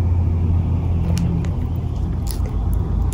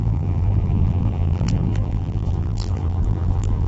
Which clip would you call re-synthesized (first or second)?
second